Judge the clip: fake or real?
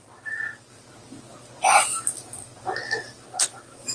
real